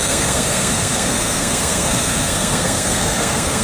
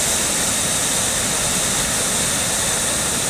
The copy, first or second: first